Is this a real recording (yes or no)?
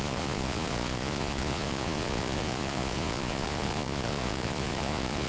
no